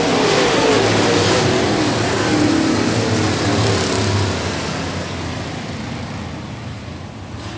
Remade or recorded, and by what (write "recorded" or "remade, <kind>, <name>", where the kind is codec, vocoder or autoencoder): recorded